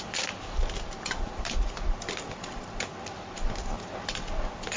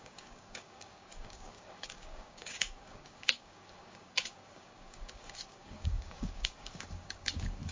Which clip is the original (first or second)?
first